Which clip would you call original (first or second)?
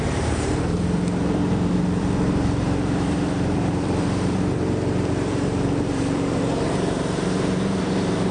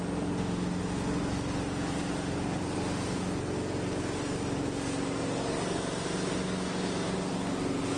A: second